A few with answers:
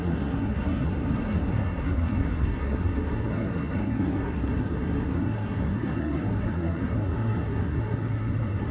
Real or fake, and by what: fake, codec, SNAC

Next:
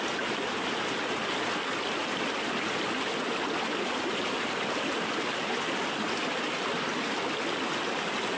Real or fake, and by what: real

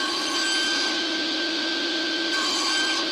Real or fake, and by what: real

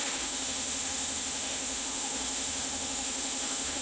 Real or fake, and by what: fake, autoencoder, DAC-VAE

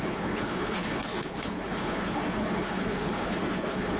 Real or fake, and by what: fake, codec, HILCodec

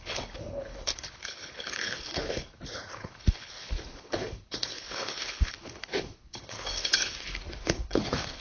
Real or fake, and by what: fake, codec, HILCodec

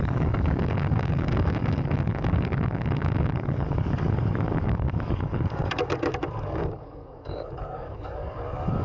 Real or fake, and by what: fake, codec, DAC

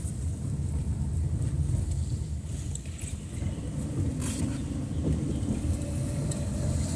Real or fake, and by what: real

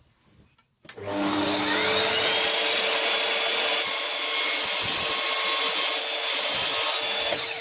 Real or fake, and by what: real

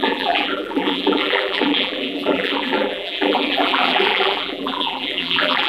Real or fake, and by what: fake, vocoder, BigVGAN v2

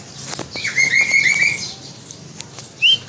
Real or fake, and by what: real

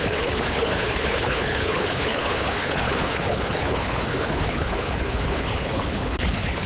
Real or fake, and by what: fake, codec, HILCodec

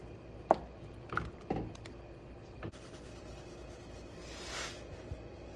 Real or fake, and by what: real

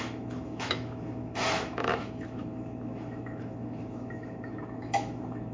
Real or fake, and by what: fake, autoencoder, DAC-VAE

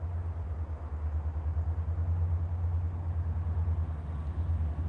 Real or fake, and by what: real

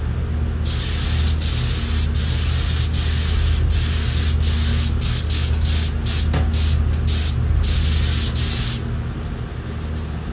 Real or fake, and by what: real